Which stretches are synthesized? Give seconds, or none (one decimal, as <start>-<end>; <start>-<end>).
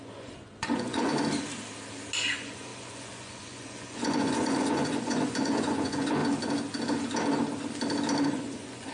0.0-1.1; 2.3-6.2; 8.3-8.9